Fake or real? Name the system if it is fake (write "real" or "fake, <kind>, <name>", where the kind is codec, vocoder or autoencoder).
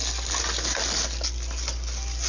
real